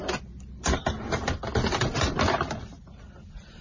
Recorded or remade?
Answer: recorded